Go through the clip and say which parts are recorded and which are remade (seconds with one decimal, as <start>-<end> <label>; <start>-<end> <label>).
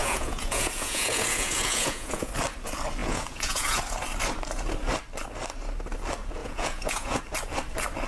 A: 0.0-2.3 remade; 2.3-3.0 recorded; 3.0-3.8 remade; 3.8-6.4 recorded; 6.4-7.2 remade; 7.2-8.1 recorded